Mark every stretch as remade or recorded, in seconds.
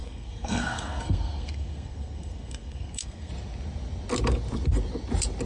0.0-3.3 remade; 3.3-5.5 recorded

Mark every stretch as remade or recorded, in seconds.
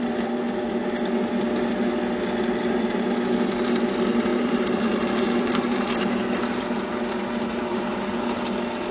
0.0-4.3 recorded; 4.3-6.9 remade; 6.9-8.9 recorded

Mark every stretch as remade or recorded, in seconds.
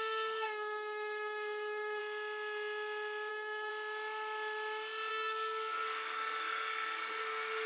0.0-2.0 remade; 2.0-3.3 recorded; 3.3-3.7 remade; 3.7-5.1 recorded; 5.1-7.7 remade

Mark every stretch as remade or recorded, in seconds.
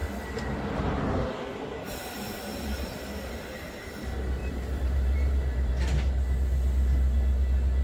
0.0-2.5 recorded; 2.5-3.3 remade; 3.3-4.4 recorded; 4.4-5.7 remade; 5.7-7.8 recorded